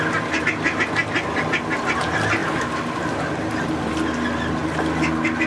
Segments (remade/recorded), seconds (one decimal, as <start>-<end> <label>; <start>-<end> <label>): 0.0-5.5 recorded